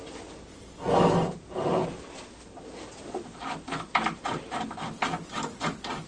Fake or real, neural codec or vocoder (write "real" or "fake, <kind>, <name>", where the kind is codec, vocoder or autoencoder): real